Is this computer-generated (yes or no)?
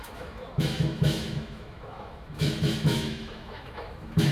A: yes